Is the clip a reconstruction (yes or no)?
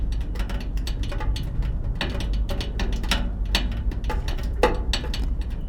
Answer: no